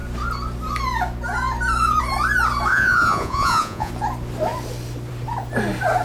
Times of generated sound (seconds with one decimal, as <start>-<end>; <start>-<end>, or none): 2.7-3.9